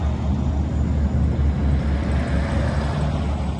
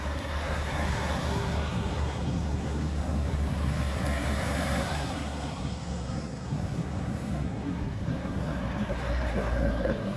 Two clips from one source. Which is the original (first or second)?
first